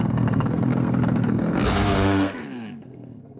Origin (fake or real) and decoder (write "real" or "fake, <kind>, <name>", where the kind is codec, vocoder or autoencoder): fake, codec, SNAC